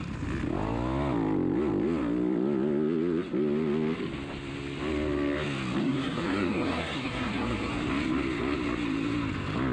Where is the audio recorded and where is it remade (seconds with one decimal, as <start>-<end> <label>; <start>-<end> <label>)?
0.0-5.8 recorded; 5.8-7.7 remade; 7.7-9.7 recorded